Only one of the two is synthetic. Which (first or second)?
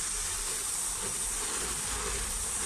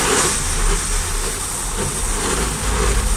first